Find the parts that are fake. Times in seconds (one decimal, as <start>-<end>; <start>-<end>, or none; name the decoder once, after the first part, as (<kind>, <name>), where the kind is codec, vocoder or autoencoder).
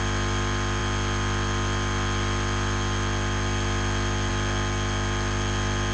none